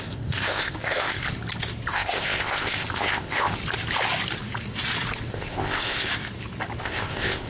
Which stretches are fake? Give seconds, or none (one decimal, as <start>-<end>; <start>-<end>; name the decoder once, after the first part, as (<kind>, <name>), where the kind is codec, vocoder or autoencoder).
0.0-1.2 (codec, ZipCodec); 1.9-3.6; 5.3-6.1; 6.8-7.5